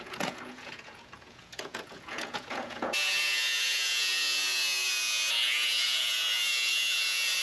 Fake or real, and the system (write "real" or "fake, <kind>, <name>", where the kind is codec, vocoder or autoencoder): fake, vocoder, Vocos